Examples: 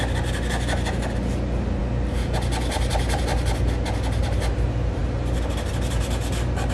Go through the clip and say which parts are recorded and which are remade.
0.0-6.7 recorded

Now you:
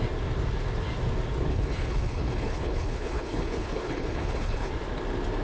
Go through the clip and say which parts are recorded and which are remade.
0.0-1.5 recorded; 1.5-4.7 remade; 4.7-5.4 recorded